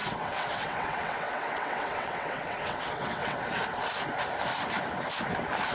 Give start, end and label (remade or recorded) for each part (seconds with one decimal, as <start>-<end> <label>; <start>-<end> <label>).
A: 0.0-3.4 remade; 3.4-5.7 recorded

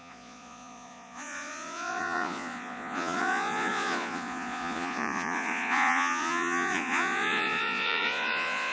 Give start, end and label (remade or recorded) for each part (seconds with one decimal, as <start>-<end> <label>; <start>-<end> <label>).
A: 0.0-8.7 remade

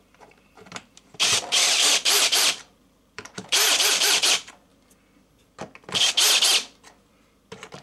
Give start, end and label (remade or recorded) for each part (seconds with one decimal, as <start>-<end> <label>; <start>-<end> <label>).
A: 0.0-4.7 remade; 4.7-7.1 recorded; 7.1-7.8 remade

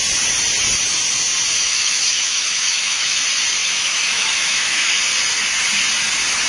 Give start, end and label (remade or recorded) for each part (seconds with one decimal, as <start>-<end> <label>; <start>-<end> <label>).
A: 0.0-1.5 recorded; 1.5-3.2 remade; 3.2-3.6 recorded; 3.6-5.0 remade; 5.0-6.5 recorded